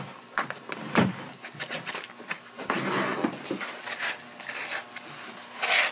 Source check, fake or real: real